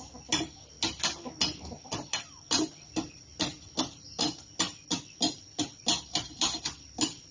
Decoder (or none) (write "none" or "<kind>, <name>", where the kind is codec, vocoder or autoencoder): none